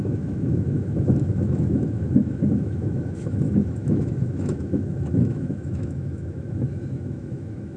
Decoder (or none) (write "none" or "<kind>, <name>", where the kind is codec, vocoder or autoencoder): autoencoder, DAC-VAE